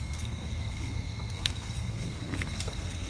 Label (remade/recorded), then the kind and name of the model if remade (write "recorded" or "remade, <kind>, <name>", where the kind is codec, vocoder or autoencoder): remade, codec, SNAC